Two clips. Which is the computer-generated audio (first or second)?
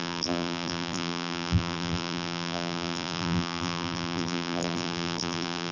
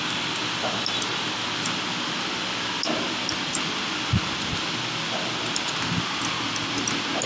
first